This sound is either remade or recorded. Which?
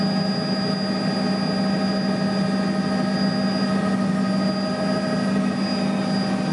recorded